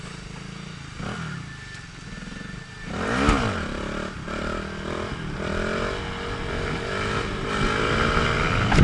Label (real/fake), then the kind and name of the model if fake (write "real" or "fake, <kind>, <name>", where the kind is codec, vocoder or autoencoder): real